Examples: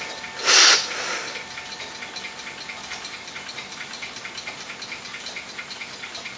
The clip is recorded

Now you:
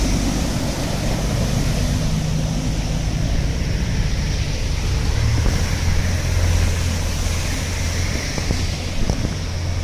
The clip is recorded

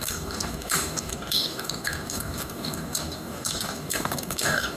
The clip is remade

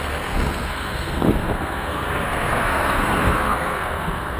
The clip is remade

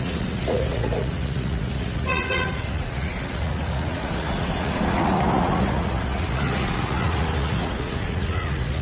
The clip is remade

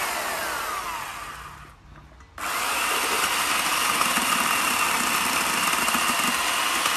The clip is recorded